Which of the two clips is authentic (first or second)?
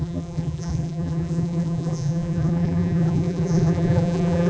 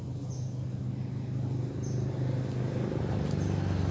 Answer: second